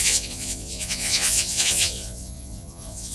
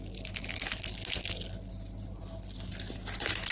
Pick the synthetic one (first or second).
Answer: first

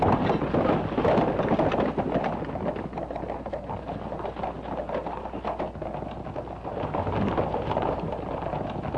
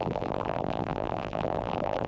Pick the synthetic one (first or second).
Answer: second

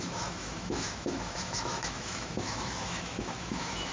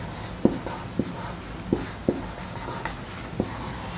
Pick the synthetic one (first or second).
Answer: first